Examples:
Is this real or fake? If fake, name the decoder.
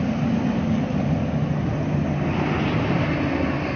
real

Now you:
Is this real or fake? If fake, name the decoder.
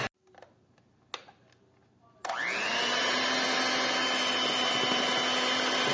real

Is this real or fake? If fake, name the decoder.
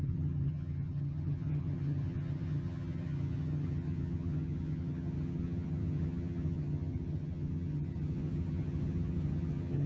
fake, vocoder, HiFi-GAN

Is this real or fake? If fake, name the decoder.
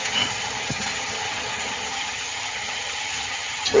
fake, vocoder, HiFi-GAN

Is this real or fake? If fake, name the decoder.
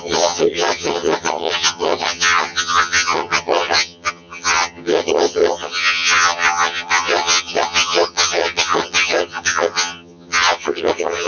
fake, vocoder, HiFi-GAN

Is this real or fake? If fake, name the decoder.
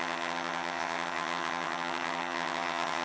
fake, vocoder, HiFi-GAN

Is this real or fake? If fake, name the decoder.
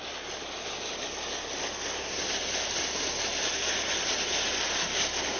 real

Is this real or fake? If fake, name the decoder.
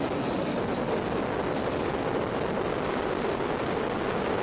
real